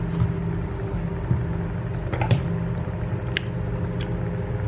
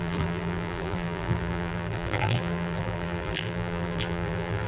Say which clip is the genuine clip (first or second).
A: first